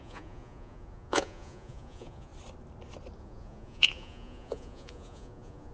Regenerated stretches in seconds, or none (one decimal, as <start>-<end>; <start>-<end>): 0.0-2.3; 3.2-5.7